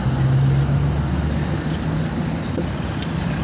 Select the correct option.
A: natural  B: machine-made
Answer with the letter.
A